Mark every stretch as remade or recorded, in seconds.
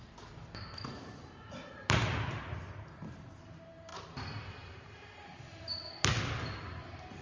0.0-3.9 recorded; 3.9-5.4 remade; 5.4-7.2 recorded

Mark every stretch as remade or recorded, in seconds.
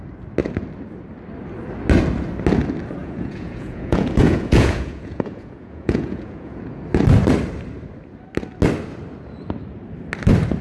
0.0-3.0 recorded; 3.0-6.8 remade; 6.8-10.6 recorded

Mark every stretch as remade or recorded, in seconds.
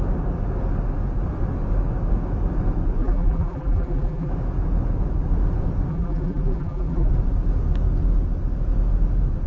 0.0-3.0 recorded; 3.0-4.3 remade; 4.3-5.9 recorded; 5.9-7.1 remade; 7.1-9.5 recorded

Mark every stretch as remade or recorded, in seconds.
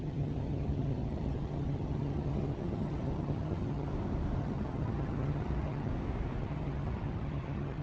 0.0-3.9 remade; 3.9-4.4 recorded; 4.4-5.9 remade; 5.9-6.4 recorded; 6.4-7.8 remade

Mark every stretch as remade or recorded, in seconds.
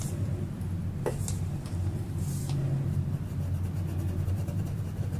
0.0-1.1 recorded; 1.1-2.0 remade; 2.0-5.2 recorded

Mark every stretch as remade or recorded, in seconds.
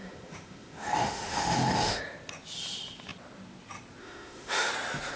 0.0-2.0 remade; 2.0-4.0 recorded; 4.0-4.7 remade; 4.7-5.2 recorded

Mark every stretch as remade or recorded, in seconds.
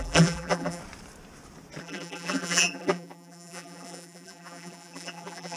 0.0-0.8 remade; 0.8-1.8 recorded; 1.8-5.6 remade